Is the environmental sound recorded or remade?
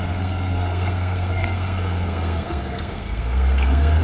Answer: remade